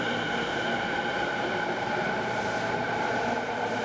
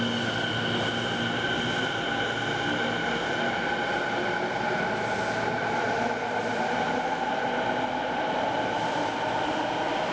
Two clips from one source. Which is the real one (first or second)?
second